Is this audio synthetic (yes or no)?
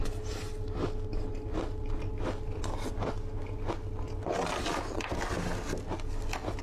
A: no